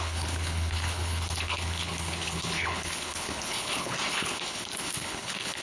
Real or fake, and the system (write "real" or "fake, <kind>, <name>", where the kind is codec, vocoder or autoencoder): fake, codec, HILCodec